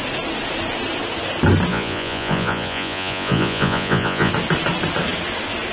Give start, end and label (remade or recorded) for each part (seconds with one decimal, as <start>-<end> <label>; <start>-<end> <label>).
0.0-1.7 recorded; 1.7-4.3 remade; 4.3-5.7 recorded